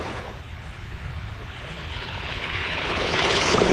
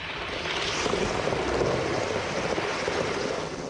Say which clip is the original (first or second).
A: second